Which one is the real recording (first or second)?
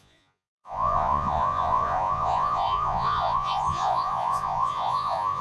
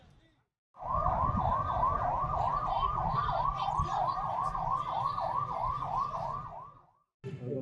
second